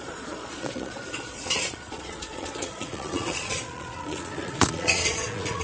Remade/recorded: remade